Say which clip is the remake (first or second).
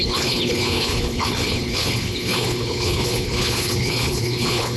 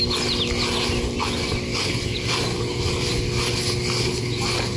first